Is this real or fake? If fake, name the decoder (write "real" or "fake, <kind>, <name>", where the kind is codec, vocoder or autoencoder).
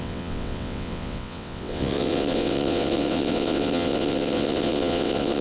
fake, vocoder, WaveNeXt